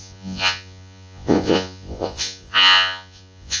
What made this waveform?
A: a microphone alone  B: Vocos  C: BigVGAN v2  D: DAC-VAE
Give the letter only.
B